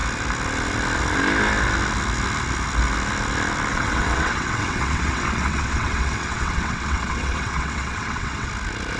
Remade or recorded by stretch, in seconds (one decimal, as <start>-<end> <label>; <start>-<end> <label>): 0.0-3.7 recorded; 3.7-8.5 remade; 8.5-9.0 recorded